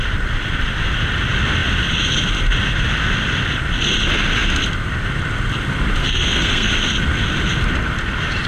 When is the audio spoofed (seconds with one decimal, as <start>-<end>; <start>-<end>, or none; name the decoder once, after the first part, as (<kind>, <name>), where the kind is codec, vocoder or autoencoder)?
6.0-6.7 (codec, SNAC)